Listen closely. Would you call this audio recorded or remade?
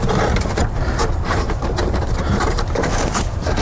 remade